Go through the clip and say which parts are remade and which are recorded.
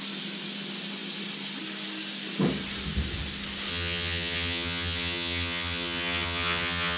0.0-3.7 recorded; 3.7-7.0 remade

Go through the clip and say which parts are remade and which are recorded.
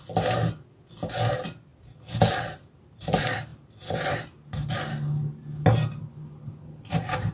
0.0-7.3 recorded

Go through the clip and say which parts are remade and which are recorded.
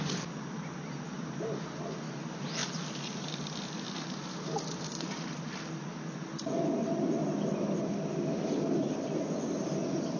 0.0-10.2 recorded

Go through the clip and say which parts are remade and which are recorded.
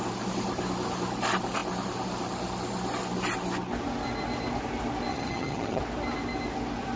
0.0-5.1 recorded; 5.1-5.8 remade; 5.8-7.0 recorded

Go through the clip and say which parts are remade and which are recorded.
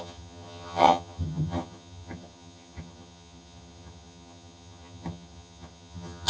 0.0-6.3 remade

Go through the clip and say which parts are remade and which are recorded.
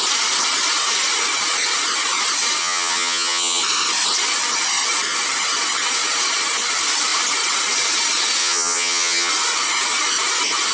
0.0-2.6 recorded; 2.6-3.6 remade; 3.6-8.4 recorded; 8.4-9.3 remade; 9.3-10.7 recorded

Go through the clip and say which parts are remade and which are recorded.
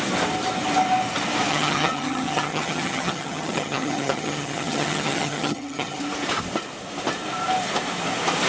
0.0-1.5 recorded; 1.5-6.0 remade; 6.0-8.5 recorded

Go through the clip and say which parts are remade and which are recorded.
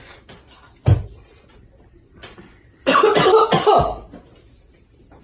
0.0-5.2 recorded